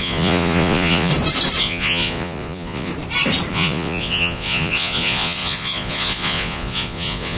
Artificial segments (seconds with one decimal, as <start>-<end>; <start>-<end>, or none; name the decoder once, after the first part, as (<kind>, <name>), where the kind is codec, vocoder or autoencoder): 0.0-1.1 (vocoder, Vocos); 1.6-2.9; 3.5-7.4